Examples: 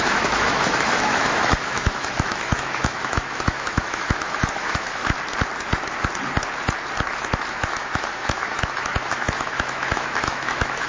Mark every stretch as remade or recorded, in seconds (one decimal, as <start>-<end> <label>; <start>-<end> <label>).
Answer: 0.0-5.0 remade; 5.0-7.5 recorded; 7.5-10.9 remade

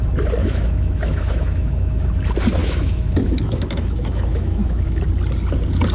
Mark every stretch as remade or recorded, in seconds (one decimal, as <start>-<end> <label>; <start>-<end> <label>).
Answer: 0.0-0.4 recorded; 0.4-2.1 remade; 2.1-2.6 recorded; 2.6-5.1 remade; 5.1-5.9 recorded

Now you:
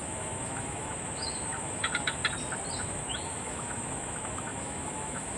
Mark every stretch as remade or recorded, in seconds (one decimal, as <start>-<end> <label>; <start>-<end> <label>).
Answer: 0.0-2.2 remade; 2.2-2.8 recorded; 2.8-5.4 remade

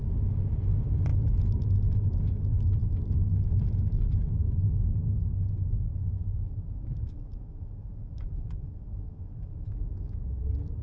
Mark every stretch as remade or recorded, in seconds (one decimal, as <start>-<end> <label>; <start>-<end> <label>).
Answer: 0.0-5.9 recorded; 5.9-10.4 remade; 10.4-10.8 recorded

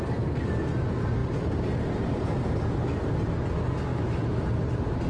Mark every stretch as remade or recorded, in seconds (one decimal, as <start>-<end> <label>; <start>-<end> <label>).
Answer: 0.0-3.9 recorded; 3.9-4.4 remade; 4.4-5.1 recorded

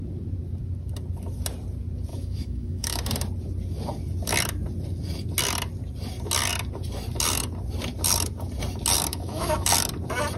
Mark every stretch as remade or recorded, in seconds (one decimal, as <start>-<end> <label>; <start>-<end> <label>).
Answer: 0.0-2.1 recorded; 2.1-3.0 remade; 3.0-9.1 recorded; 9.1-9.7 remade; 9.7-10.4 recorded

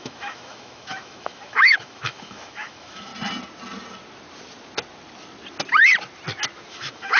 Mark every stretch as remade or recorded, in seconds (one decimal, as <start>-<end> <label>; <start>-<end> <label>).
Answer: 0.0-3.1 remade; 3.1-6.7 recorded; 6.7-7.2 remade

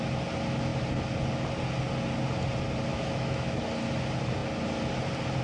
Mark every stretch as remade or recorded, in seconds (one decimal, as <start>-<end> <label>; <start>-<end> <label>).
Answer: 0.0-2.9 recorded; 2.9-3.6 remade; 3.6-5.4 recorded